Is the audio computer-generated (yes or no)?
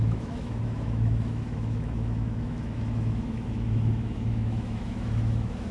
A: yes